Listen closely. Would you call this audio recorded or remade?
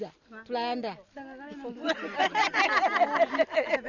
recorded